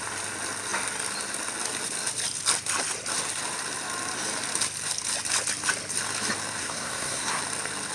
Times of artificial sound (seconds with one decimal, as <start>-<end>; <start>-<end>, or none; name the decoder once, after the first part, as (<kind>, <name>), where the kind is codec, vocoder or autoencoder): 6.6-7.4 (codec, SNAC)